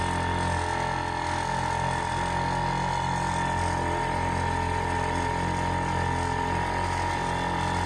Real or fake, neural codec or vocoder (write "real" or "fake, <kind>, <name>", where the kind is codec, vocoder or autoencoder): real